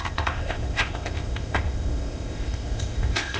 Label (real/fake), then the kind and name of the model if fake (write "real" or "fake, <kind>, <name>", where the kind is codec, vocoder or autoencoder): fake, codec, ZipCodec